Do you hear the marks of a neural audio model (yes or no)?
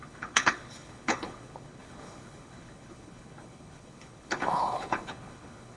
yes